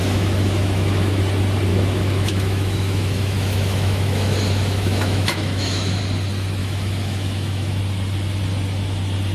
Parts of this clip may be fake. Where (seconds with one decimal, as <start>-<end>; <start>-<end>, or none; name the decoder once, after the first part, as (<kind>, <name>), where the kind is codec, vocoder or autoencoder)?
0.0-1.2 (autoencoder, DAC-VAE); 1.7-6.0; 6.6-7.8